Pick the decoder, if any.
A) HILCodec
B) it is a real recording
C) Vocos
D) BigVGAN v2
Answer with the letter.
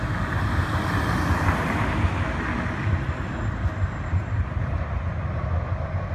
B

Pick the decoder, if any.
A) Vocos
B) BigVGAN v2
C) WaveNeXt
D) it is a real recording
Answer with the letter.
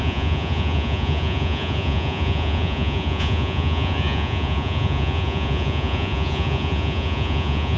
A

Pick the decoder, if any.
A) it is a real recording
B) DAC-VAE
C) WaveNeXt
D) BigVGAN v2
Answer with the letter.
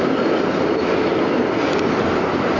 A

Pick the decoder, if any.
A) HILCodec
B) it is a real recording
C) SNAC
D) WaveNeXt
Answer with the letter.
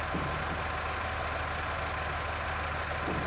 B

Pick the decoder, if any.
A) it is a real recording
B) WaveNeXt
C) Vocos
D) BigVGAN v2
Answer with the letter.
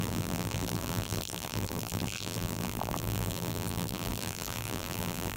D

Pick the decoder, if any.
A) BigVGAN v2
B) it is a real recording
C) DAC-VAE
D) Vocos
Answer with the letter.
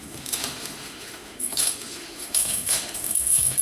C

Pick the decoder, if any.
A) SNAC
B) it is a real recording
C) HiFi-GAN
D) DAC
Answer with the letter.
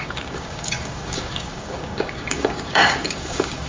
D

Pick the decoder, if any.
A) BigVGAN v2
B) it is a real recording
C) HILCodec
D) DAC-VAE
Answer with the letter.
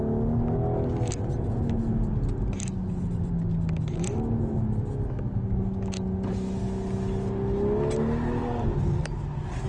B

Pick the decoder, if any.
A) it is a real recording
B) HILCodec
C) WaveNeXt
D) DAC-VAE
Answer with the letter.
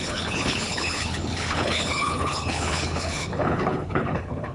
B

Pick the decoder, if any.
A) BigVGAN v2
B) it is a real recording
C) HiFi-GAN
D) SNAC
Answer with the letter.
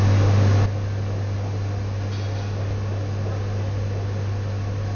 B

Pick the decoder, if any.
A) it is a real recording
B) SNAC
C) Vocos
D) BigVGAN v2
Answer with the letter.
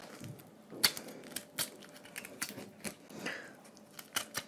A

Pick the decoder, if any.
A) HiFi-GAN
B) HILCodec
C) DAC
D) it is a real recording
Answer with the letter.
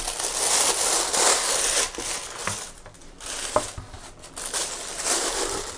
D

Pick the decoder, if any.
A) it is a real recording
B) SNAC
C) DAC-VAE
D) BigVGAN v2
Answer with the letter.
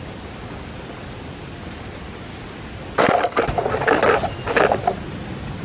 A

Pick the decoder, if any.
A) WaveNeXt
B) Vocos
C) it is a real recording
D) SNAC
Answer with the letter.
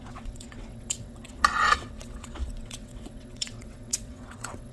A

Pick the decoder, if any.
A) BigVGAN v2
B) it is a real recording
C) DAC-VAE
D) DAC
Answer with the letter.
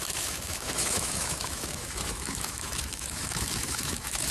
C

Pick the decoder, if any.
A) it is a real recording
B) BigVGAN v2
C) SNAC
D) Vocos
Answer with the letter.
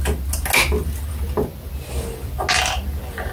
A